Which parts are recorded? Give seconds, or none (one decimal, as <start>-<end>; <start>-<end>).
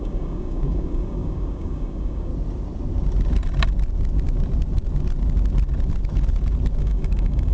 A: 2.3-6.8